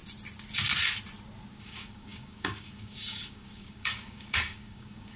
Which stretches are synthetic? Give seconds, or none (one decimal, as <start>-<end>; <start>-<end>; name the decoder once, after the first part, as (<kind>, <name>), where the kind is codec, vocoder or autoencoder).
1.6-5.2 (codec, DAC)